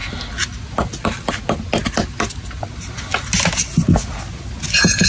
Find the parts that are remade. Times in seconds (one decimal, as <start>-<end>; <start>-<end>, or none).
none